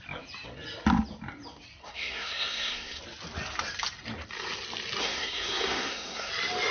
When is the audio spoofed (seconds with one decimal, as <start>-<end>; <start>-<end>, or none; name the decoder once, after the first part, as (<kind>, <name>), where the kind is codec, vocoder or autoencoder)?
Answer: 1.8-3.0 (codec, SNAC); 5.0-6.3